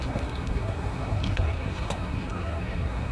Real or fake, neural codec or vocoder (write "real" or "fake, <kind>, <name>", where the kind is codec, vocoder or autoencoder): fake, codec, SNAC